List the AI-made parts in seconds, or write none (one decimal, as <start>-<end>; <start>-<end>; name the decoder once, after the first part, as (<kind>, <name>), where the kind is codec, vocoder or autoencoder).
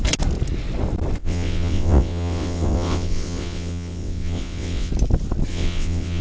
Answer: 1.2-4.9 (vocoder, WaveNeXt); 5.5-6.2